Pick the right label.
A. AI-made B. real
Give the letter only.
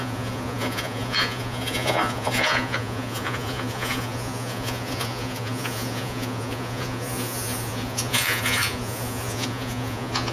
A